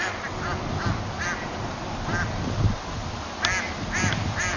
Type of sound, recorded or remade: recorded